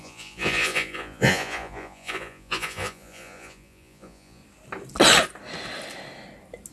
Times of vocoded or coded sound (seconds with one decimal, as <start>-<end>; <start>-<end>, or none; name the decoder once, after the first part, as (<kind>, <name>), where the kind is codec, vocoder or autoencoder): 0.0-4.4 (vocoder, Vocos)